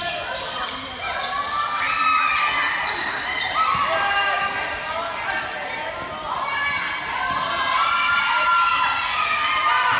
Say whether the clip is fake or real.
real